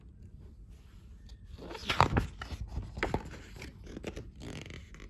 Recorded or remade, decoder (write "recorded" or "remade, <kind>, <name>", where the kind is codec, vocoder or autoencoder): recorded